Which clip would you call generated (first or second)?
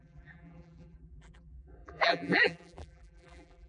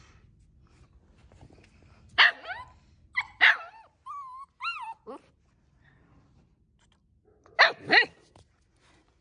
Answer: first